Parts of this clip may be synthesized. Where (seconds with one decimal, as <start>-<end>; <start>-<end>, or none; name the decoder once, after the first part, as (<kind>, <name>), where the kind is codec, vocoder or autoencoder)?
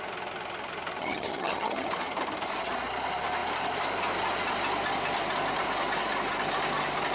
1.0-1.9 (vocoder, HiFi-GAN)